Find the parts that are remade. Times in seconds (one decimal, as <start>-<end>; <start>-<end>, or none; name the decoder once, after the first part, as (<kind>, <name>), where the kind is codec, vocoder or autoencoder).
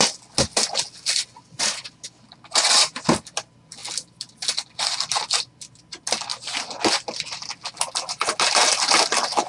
none